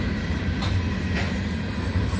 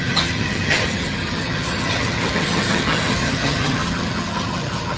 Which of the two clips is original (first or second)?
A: first